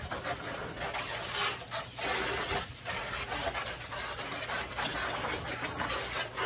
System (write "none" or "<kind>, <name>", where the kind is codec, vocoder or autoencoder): none